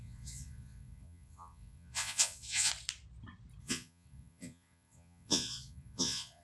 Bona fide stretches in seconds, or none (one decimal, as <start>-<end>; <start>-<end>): 2.7-3.6